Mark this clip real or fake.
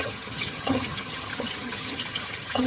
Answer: fake